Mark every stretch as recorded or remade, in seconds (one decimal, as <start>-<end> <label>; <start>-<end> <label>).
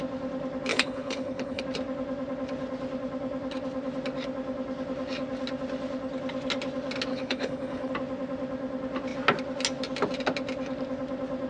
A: 0.0-0.7 recorded; 0.7-1.6 remade; 1.6-7.1 recorded; 7.1-7.9 remade; 7.9-11.5 recorded